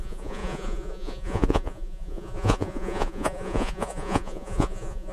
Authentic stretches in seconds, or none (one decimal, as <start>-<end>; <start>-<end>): none